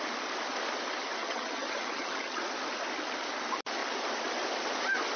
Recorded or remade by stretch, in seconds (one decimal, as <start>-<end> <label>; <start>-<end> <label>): 0.0-1.2 recorded; 1.2-2.4 remade; 2.4-5.2 recorded

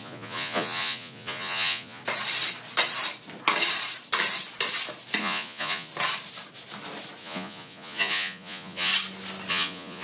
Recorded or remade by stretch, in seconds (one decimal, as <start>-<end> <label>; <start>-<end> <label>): 0.0-2.0 remade; 2.0-5.2 recorded; 5.2-5.9 remade; 5.9-7.2 recorded; 7.2-8.9 remade; 8.9-9.5 recorded; 9.5-10.0 remade

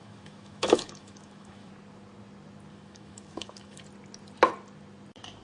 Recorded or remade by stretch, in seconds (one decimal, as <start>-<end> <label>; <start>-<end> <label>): 0.0-1.7 remade; 1.7-2.7 recorded; 2.7-3.8 remade; 3.8-5.4 recorded

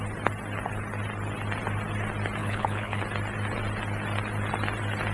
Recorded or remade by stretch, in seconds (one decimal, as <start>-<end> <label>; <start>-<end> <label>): 0.0-2.4 recorded; 2.4-3.0 remade; 3.0-5.1 recorded